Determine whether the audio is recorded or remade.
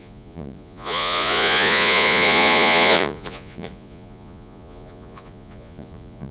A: remade